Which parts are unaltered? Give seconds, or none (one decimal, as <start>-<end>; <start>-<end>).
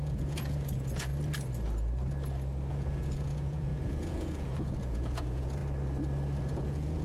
1.1-2.7; 5.6-6.4